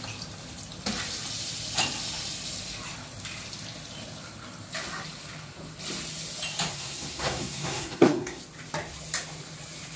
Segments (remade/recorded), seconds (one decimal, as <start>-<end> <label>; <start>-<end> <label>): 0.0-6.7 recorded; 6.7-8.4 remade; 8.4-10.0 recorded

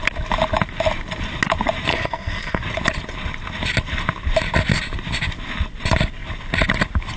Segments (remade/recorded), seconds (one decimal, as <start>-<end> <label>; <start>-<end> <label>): 0.0-1.9 recorded; 1.9-2.6 remade; 2.6-7.2 recorded

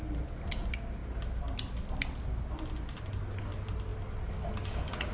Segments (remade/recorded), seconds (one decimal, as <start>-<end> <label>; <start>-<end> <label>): 0.0-5.1 recorded